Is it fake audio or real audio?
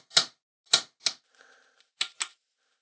real